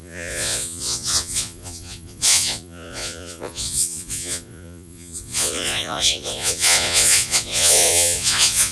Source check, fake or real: fake